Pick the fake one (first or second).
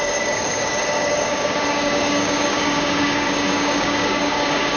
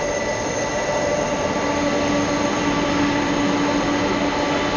first